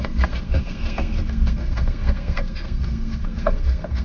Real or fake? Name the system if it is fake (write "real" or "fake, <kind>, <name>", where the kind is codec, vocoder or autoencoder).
fake, codec, SNAC